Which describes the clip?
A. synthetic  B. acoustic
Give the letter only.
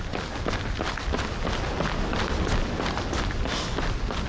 B